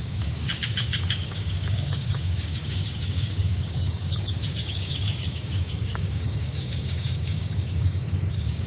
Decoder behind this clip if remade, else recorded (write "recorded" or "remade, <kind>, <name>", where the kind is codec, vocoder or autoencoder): remade, codec, DAC